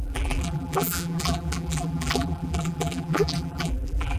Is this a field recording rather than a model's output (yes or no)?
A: no